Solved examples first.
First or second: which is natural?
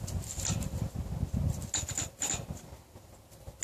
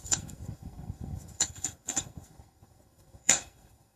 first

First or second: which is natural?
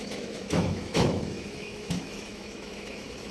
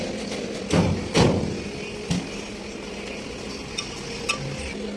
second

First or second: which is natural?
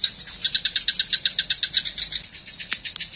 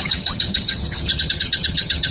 first